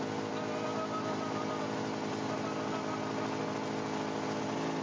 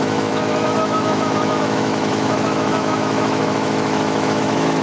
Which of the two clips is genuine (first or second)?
first